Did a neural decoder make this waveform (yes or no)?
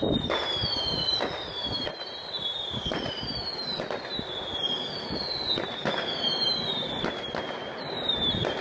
no